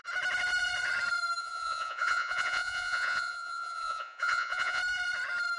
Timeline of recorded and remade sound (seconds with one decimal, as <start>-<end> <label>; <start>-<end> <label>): 0.0-1.4 recorded; 1.4-4.8 remade; 4.8-5.6 recorded

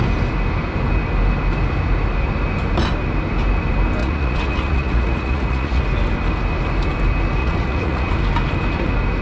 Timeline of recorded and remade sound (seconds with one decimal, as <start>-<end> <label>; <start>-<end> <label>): 0.0-4.0 recorded; 4.0-5.8 remade; 5.8-7.4 recorded; 7.4-8.1 remade; 8.1-9.2 recorded

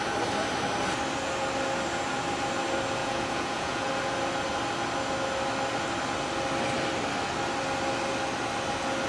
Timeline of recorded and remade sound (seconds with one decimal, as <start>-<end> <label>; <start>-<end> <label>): 0.0-3.0 recorded; 3.0-3.9 remade; 3.9-9.1 recorded

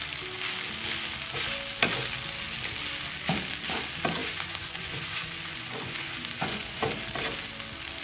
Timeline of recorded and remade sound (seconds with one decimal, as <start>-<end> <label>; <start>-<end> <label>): 0.0-4.2 recorded; 4.2-6.8 remade; 6.8-8.0 recorded

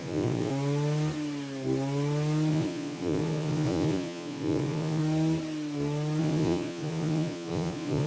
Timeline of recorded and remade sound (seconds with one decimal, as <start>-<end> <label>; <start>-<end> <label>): 0.0-0.5 remade; 0.5-2.5 recorded; 2.5-5.0 remade; 5.0-6.2 recorded; 6.2-8.1 remade

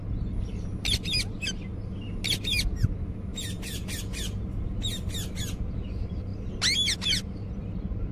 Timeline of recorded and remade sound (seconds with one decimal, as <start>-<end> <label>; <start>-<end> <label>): 0.0-8.1 recorded